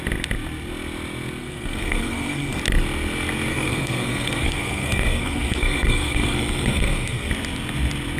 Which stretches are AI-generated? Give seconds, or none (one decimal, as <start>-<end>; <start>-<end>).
1.4-2.6; 3.5-7.3